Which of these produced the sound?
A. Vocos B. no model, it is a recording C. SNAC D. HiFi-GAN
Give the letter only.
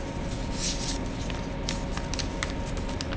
B